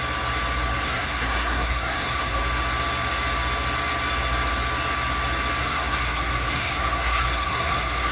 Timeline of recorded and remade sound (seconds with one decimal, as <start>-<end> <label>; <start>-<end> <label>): 0.0-0.8 recorded; 0.8-2.4 remade; 2.4-5.6 recorded; 5.6-8.1 remade